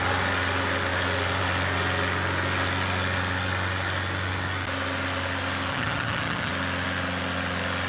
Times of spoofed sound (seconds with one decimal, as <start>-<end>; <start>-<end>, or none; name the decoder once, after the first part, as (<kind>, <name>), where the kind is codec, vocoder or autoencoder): 5.7-6.5 (vocoder, HiFi-GAN)